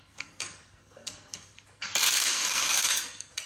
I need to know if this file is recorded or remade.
remade